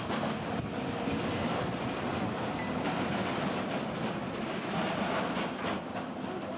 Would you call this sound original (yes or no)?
yes